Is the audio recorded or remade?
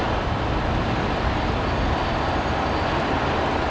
recorded